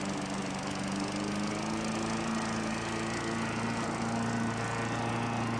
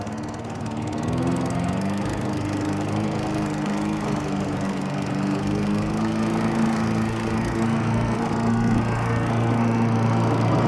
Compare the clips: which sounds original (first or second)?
first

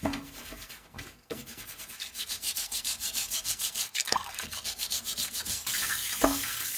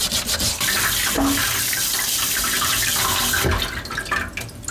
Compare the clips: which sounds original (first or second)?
second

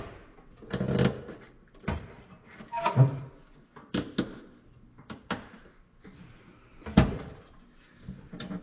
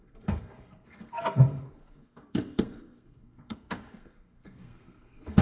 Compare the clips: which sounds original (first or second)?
first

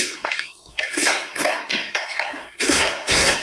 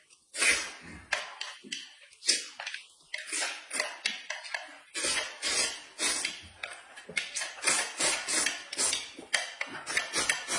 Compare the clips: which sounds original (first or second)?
second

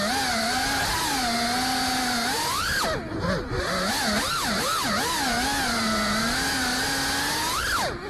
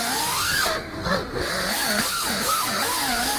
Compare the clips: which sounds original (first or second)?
first